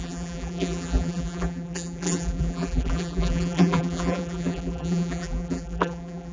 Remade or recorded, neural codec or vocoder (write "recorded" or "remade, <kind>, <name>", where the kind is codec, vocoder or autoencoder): remade, vocoder, BigVGAN v2